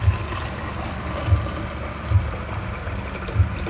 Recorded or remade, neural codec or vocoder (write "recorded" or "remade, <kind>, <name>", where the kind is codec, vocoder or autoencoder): recorded